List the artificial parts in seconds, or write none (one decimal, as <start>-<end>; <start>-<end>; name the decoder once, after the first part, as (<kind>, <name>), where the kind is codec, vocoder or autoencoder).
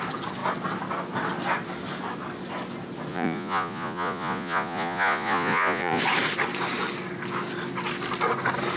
3.1-6.0 (vocoder, Vocos)